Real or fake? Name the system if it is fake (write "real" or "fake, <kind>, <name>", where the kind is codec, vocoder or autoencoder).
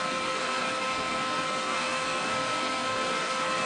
fake, codec, SNAC